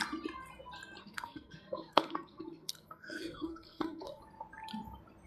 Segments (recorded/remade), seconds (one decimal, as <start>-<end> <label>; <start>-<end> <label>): 0.0-1.0 recorded; 1.0-4.2 remade; 4.2-5.3 recorded